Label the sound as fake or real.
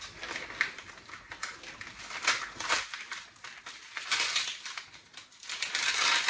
real